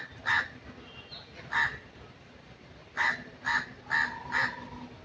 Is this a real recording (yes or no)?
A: yes